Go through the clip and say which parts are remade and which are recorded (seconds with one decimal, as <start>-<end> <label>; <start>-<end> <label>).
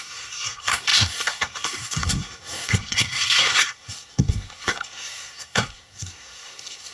0.0-6.9 remade